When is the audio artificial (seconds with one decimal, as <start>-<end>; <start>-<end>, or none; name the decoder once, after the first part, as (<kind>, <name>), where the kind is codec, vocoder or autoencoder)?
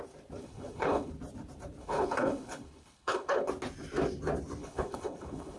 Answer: 0.4-1.1 (codec, HILCodec); 1.8-3.5; 4.6-5.6